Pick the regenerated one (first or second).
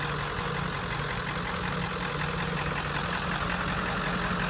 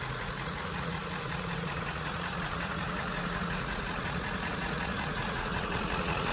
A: second